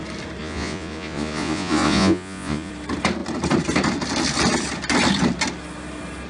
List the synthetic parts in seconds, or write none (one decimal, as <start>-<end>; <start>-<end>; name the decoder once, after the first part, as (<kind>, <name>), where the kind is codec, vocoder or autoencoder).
0.4-2.7 (vocoder, Vocos)